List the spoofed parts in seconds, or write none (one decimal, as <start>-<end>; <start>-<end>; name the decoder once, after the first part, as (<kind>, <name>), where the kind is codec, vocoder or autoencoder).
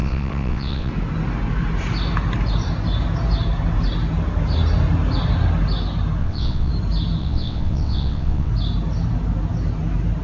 0.0-0.9 (vocoder, WaveNeXt); 6.2-6.7; 7.2-8.5